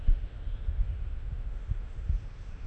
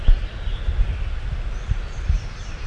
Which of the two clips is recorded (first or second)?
second